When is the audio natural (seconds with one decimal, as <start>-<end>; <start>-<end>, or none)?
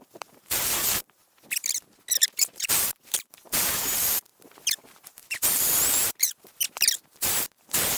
1.2-2.3